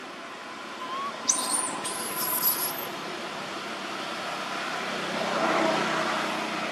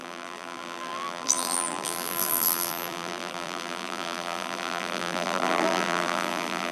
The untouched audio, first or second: first